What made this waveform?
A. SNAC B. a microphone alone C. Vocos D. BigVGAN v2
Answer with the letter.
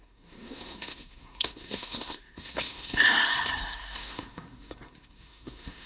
A